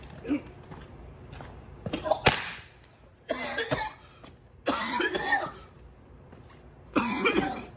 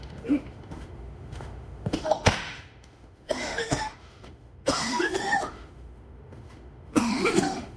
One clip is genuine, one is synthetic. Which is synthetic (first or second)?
second